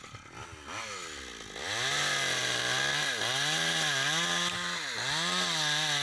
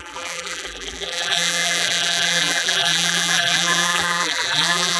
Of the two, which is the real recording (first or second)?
first